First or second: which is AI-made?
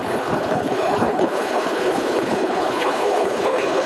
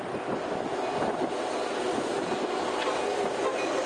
first